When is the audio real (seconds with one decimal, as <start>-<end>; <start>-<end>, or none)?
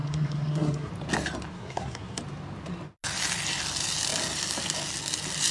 0.9-1.5; 2.2-5.5